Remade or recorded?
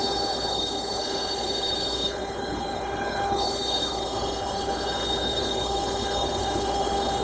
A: remade